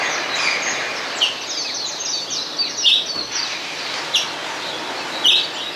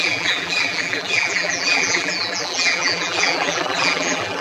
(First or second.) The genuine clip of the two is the first